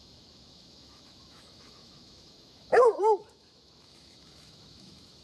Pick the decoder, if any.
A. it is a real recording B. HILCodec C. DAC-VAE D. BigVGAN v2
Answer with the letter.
C